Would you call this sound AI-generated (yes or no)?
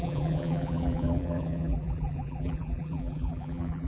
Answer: yes